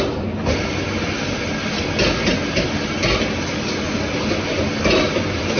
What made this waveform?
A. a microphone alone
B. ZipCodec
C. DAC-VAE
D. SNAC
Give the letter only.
A